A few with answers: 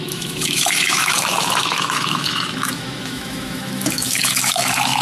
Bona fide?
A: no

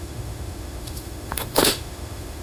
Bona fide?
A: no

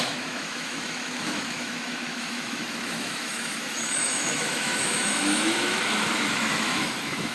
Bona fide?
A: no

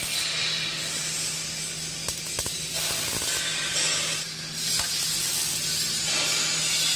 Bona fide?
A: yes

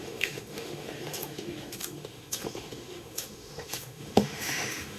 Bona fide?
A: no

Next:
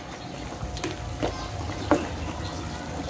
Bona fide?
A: yes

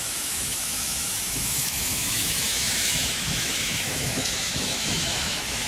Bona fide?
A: no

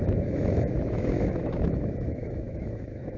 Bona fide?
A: no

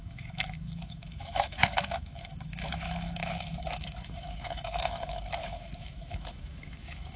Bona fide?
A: no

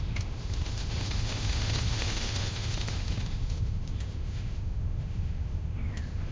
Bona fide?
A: no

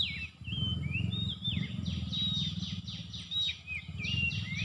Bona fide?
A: yes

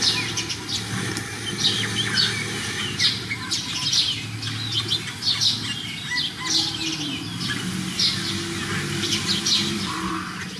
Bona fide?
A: yes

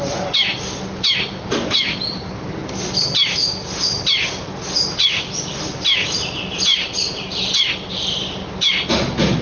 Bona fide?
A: yes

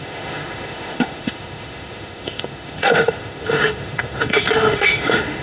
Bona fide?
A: no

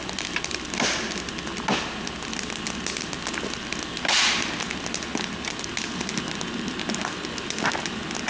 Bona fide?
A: yes